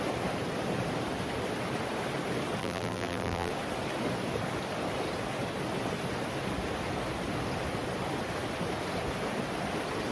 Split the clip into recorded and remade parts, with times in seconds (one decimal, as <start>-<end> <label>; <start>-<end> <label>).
0.0-2.6 recorded; 2.6-3.5 remade; 3.5-10.1 recorded